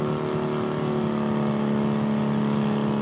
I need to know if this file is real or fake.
real